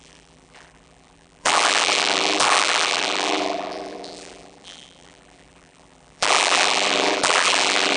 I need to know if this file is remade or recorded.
remade